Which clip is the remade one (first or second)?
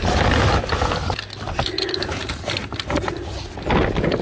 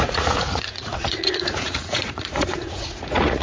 second